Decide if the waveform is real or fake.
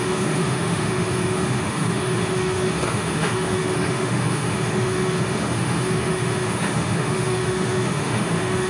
fake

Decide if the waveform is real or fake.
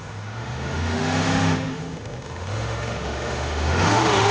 fake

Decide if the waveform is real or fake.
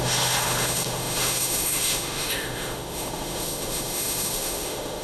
fake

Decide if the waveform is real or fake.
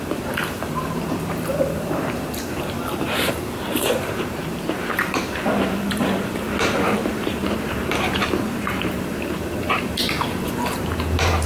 fake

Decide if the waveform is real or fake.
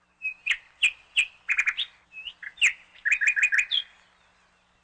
real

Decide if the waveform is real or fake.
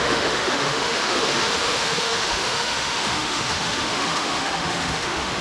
fake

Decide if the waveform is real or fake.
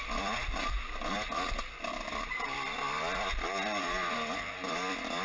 fake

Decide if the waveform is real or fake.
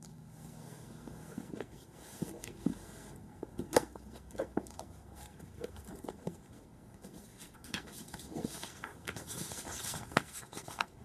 fake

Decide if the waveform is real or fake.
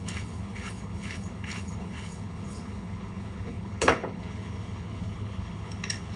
fake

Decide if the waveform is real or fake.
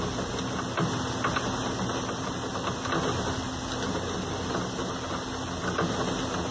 real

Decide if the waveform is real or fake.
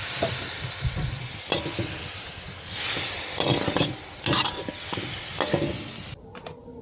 real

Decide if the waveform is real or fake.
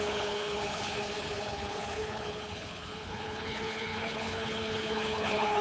fake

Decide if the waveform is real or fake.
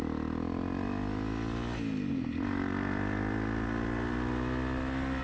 real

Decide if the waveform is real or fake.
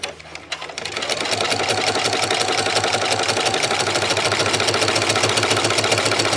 real